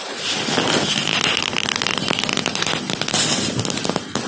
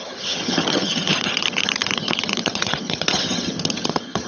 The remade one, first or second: second